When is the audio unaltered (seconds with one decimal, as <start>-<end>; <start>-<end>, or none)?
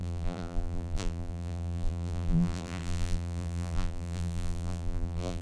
none